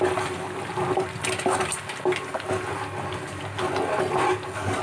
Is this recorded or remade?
recorded